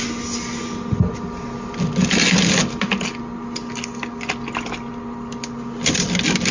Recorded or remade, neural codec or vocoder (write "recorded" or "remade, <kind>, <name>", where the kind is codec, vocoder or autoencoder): recorded